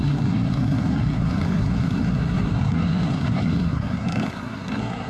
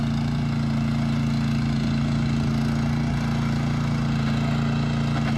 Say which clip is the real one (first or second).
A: second